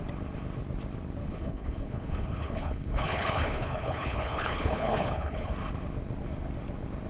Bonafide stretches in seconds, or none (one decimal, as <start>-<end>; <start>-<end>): 0.0-1.2; 5.5-7.1